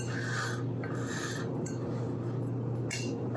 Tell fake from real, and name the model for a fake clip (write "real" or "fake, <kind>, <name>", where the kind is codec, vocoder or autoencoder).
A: real